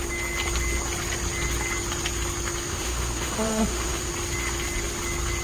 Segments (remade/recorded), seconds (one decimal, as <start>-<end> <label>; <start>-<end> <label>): 0.0-2.7 recorded; 2.7-4.1 remade; 4.1-5.4 recorded